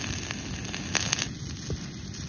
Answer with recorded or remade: recorded